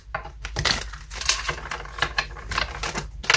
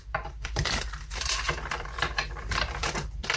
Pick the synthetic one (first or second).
second